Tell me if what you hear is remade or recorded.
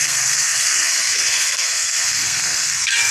remade